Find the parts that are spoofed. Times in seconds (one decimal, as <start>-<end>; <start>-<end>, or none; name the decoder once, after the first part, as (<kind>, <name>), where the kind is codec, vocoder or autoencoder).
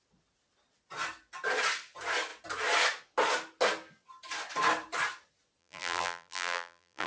5.6-7.1 (vocoder, BigVGAN v2)